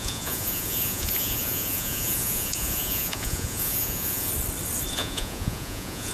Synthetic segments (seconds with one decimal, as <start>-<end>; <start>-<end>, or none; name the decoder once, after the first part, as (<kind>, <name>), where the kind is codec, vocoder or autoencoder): 0.0-4.3 (vocoder, Vocos); 4.9-6.1